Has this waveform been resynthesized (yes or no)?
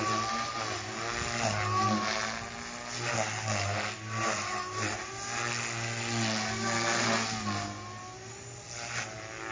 no